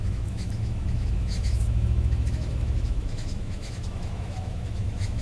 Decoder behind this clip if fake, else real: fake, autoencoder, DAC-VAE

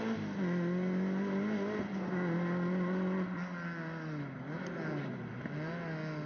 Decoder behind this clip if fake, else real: real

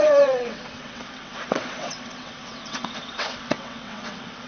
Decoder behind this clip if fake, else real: fake, vocoder, WaveNeXt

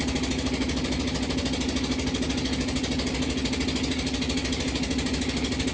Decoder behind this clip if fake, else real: real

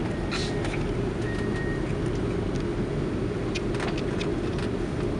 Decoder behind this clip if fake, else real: real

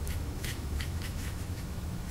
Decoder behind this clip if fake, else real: fake, autoencoder, DAC-VAE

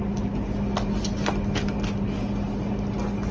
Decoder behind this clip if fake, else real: real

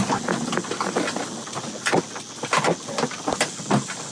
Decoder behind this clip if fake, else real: real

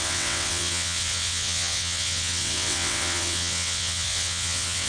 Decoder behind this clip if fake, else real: fake, vocoder, WaveNeXt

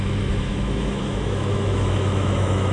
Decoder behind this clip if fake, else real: fake, autoencoder, DAC-VAE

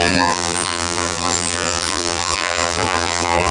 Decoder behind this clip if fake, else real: fake, vocoder, BigVGAN v2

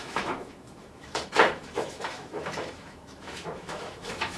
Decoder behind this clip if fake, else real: fake, autoencoder, DAC-VAE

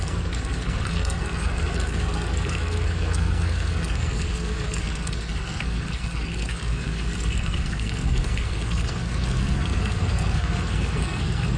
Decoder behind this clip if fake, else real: fake, codec, SNAC